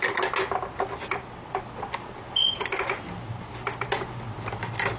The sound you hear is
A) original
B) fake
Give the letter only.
A